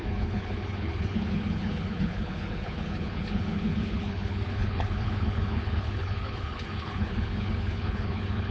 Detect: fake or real fake